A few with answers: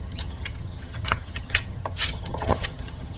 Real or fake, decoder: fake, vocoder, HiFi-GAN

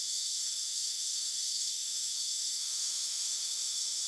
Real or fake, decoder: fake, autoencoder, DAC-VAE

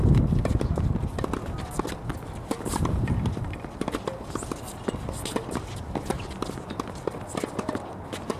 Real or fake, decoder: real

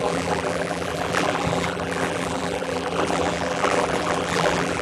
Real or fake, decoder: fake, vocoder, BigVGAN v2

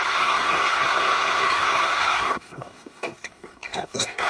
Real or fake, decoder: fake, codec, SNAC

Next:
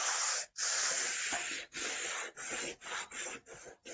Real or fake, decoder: real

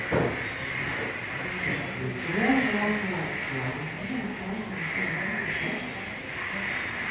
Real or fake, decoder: real